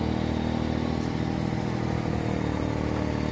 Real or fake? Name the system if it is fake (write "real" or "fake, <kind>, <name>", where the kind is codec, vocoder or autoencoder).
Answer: real